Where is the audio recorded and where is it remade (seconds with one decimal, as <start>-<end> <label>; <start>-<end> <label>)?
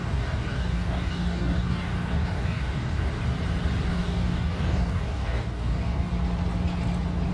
0.0-3.2 remade; 3.2-3.9 recorded; 3.9-6.1 remade; 6.1-7.3 recorded